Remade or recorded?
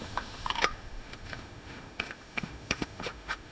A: remade